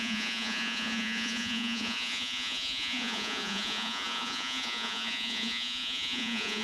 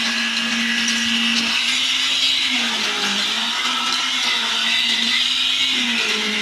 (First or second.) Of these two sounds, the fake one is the first